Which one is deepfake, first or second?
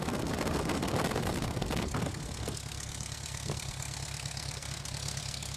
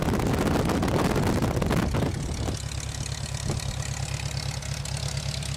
first